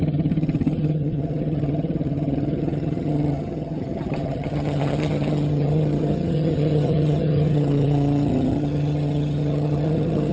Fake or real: fake